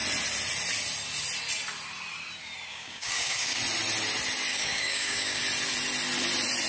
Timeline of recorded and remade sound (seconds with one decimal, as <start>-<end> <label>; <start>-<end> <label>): 0.0-2.7 recorded; 2.7-3.6 remade; 3.6-4.5 recorded; 4.5-5.4 remade; 5.4-6.7 recorded